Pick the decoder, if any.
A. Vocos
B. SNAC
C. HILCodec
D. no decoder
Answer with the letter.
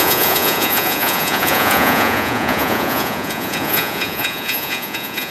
A